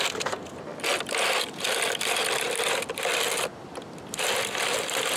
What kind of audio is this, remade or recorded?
recorded